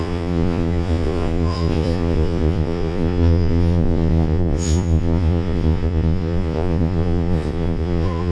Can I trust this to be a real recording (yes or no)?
no